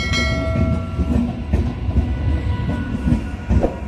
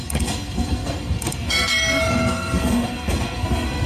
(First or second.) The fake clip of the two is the second